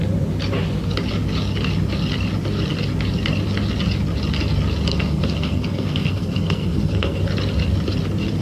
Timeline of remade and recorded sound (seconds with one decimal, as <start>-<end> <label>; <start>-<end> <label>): 0.0-4.9 recorded; 4.9-7.2 remade; 7.2-8.4 recorded